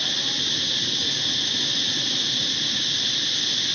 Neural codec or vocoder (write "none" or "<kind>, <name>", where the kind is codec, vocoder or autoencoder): none